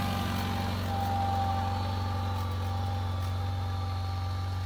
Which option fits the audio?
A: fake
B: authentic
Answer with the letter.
B